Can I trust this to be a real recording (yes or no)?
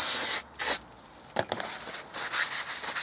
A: yes